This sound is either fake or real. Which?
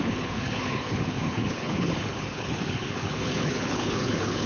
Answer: fake